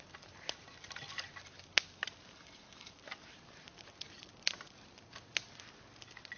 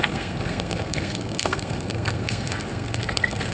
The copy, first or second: second